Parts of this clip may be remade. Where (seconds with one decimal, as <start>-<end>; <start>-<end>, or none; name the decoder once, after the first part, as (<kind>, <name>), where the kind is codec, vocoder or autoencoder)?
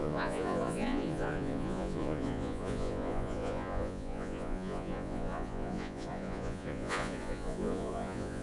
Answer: 0.0-8.4 (vocoder, Vocos)